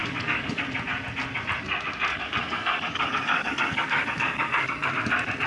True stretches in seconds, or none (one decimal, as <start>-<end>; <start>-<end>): 0.6-2.1; 4.9-5.5